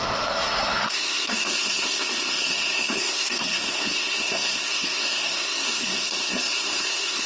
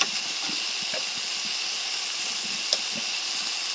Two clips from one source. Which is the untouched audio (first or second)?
second